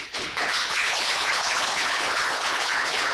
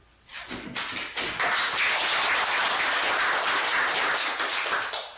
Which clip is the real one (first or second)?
second